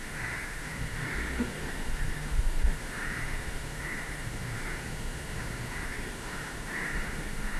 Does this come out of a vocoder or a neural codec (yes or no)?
yes